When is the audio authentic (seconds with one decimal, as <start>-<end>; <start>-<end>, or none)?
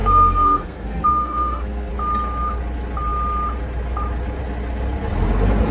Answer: 1.9-5.7